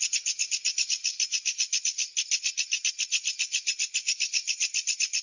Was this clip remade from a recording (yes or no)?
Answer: no